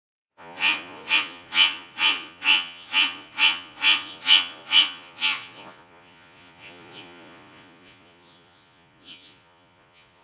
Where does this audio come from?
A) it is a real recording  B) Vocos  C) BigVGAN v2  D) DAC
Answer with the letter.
B